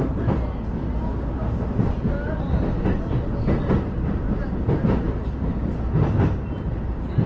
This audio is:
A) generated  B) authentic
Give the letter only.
B